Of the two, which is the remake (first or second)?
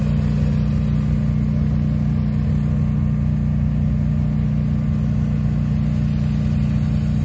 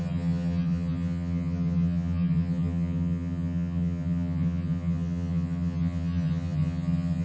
second